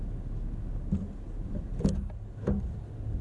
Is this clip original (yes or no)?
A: yes